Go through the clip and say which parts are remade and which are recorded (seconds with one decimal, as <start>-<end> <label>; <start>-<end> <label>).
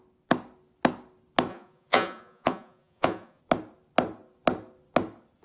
0.0-1.5 recorded; 1.5-3.4 remade; 3.4-5.4 recorded